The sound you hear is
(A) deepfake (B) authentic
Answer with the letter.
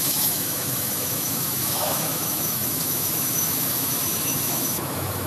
A